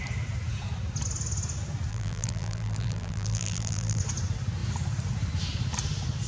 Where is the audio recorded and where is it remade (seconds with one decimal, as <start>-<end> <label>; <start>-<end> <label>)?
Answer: 0.0-1.9 recorded; 1.9-4.0 remade; 4.0-6.3 recorded

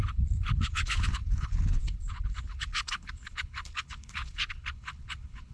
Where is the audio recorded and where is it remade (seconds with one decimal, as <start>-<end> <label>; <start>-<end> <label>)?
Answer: 0.0-5.5 remade